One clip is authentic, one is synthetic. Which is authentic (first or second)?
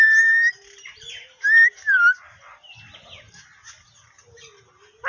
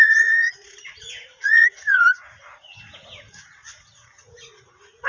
first